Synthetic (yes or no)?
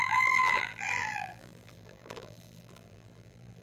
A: yes